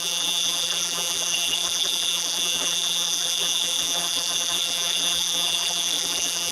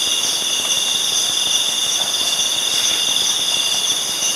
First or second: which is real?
second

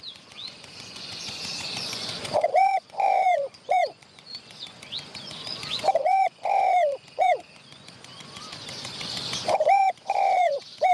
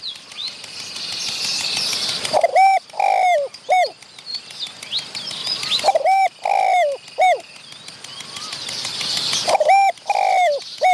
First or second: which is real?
second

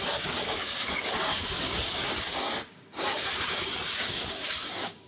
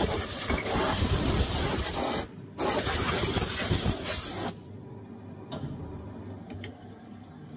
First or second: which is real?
second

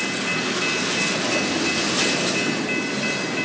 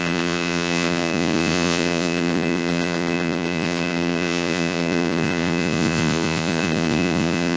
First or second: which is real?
first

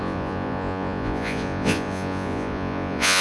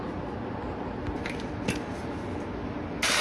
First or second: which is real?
second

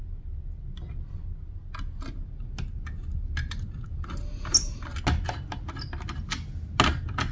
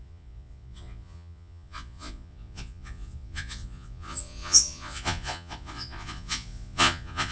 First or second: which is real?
first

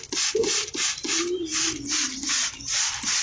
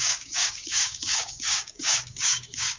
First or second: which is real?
first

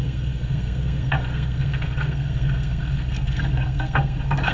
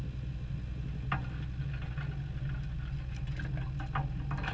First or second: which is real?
second